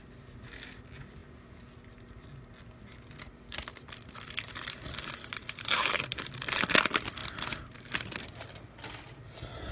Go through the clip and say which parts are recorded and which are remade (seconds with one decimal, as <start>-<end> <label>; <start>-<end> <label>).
0.0-5.4 recorded; 5.4-6.0 remade; 6.0-9.7 recorded

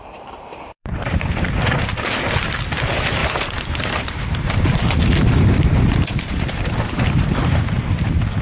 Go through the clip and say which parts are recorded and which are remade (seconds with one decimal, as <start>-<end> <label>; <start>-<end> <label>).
0.0-1.5 remade; 1.5-3.2 recorded; 3.2-7.8 remade; 7.8-8.4 recorded

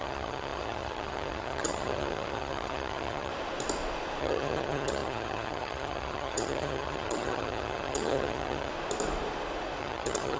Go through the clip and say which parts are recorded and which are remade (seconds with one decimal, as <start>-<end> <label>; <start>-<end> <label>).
0.0-3.3 remade; 3.3-4.2 recorded; 4.2-8.7 remade; 8.7-9.8 recorded; 9.8-10.4 remade

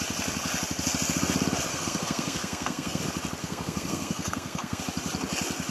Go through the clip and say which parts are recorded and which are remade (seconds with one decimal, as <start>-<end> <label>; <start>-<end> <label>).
0.0-1.7 recorded; 1.7-3.0 remade; 3.0-3.4 recorded; 3.4-4.8 remade; 4.8-5.7 recorded

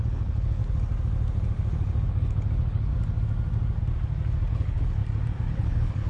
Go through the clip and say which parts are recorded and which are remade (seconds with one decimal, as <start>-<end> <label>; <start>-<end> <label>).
0.0-0.6 remade; 0.6-2.1 recorded; 2.1-2.9 remade; 2.9-4.5 recorded; 4.5-5.0 remade; 5.0-5.5 recorded; 5.5-6.1 remade

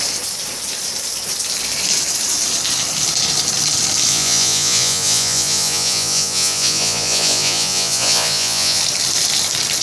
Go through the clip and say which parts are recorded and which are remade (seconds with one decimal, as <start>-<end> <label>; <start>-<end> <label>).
0.0-4.1 recorded; 4.1-8.8 remade; 8.8-9.8 recorded

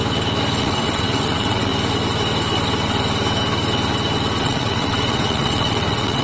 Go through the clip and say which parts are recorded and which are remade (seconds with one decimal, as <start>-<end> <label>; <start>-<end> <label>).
0.0-0.6 recorded; 0.6-1.7 remade; 1.7-4.4 recorded; 4.4-6.2 remade